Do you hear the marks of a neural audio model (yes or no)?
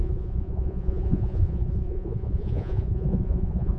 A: yes